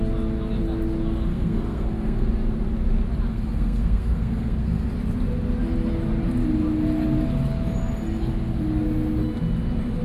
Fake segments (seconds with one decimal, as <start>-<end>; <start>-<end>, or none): 1.3-2.3; 3.3-4.9